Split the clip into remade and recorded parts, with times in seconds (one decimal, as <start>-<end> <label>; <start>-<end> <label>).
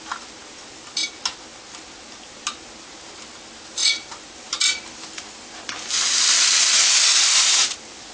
0.0-1.0 remade; 1.0-3.0 recorded; 3.0-8.1 remade